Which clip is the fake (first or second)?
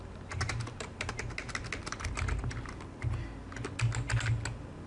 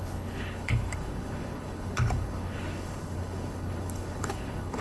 second